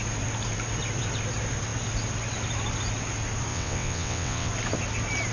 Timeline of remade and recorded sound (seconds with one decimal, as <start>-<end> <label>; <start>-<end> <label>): 0.0-3.5 recorded; 3.5-4.5 remade; 4.5-5.3 recorded